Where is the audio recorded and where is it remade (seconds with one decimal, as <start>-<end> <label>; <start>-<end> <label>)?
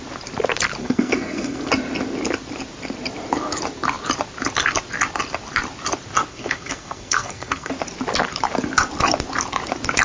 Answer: 0.0-0.8 recorded; 0.8-1.7 remade; 1.7-6.3 recorded; 6.3-7.7 remade; 7.7-10.0 recorded